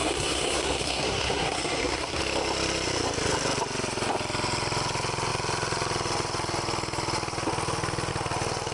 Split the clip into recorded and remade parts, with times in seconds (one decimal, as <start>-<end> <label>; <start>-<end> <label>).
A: 0.0-2.2 remade; 2.2-8.7 recorded